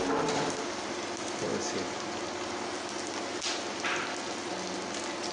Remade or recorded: recorded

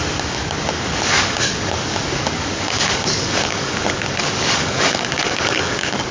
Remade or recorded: remade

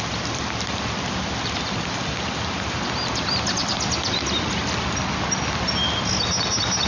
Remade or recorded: recorded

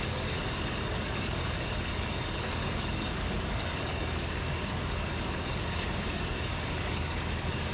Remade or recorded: remade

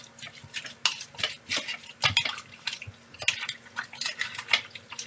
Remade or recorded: recorded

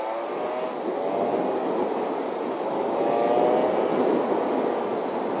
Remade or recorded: recorded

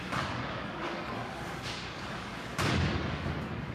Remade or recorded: remade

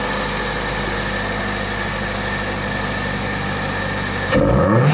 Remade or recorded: recorded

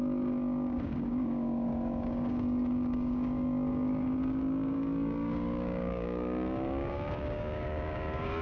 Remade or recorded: remade